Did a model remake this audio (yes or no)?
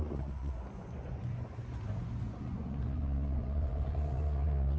yes